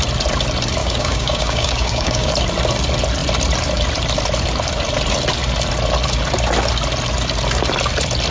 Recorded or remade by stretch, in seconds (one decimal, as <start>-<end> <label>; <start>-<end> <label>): 0.0-0.8 recorded; 0.8-2.3 remade; 2.3-8.3 recorded